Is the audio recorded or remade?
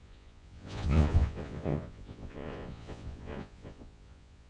remade